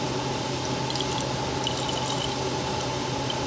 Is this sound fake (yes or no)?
no